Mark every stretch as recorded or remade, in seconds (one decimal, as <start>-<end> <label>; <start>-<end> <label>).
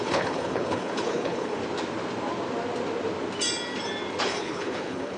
0.0-1.6 remade; 1.6-4.2 recorded; 4.2-5.2 remade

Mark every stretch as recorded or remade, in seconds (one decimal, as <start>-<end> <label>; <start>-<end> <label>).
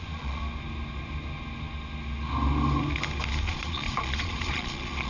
0.0-0.4 remade; 0.4-3.4 recorded; 3.4-5.1 remade